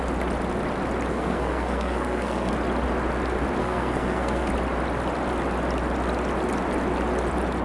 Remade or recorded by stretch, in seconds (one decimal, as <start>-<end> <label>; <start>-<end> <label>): 0.0-1.1 recorded; 1.1-2.5 remade; 2.5-3.6 recorded; 3.6-4.5 remade; 4.5-7.6 recorded